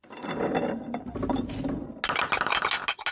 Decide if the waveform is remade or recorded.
recorded